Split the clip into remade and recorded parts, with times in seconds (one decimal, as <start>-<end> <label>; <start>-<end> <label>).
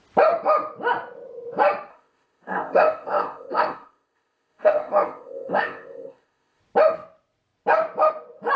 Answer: 0.0-1.9 recorded; 1.9-6.6 remade; 6.6-8.6 recorded